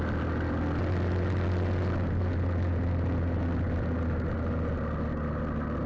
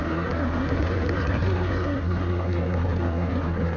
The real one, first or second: first